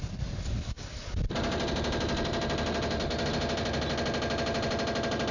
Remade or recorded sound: recorded